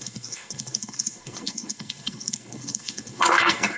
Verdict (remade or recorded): remade